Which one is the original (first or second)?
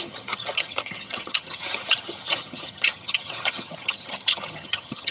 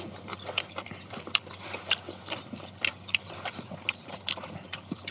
second